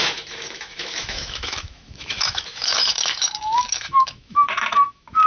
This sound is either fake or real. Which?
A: fake